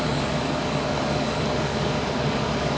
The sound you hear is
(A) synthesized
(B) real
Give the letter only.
A